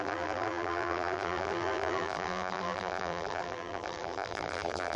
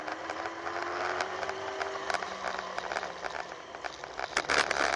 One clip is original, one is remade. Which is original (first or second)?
second